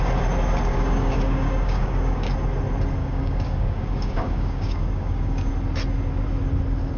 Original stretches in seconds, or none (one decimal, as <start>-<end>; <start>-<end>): 0.0-0.7; 2.3-3.0; 5.5-7.0